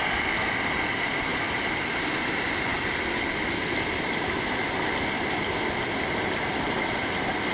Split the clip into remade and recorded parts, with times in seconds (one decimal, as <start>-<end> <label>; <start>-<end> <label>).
0.0-7.5 recorded